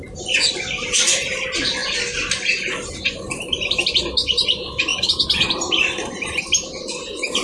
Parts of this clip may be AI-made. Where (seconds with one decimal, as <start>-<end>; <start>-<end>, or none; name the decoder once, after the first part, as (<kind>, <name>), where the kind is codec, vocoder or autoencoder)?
4.9-6.4 (vocoder, BigVGAN v2)